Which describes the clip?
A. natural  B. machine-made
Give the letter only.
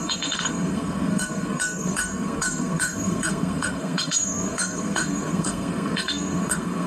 B